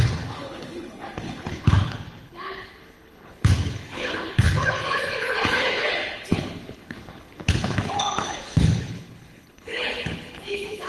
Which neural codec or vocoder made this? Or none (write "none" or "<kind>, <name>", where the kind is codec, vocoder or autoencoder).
codec, HILCodec